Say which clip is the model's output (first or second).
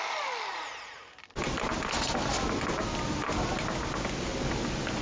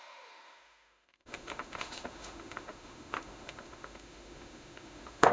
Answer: second